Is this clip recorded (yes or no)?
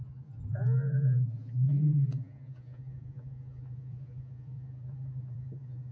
no